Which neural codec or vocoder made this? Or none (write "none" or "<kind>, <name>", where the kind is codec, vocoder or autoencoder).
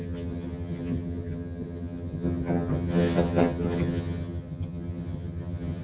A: vocoder, HiFi-GAN